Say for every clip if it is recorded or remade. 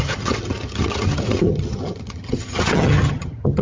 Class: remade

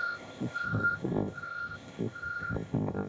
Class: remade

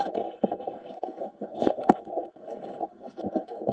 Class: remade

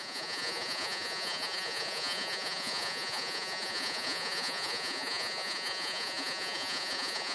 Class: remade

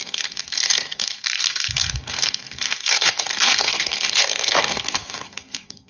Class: remade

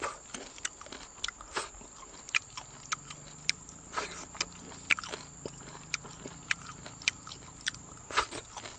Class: recorded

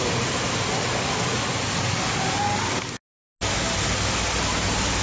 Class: recorded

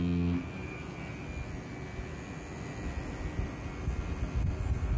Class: recorded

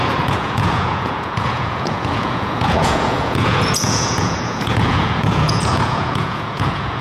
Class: remade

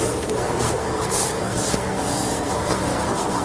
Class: remade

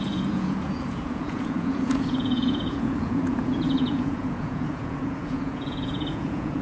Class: remade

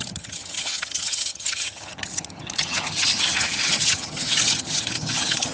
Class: remade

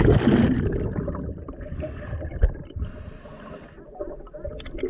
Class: recorded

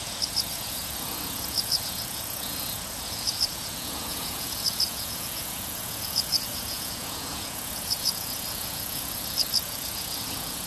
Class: remade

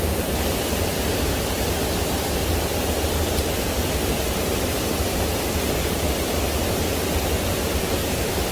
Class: recorded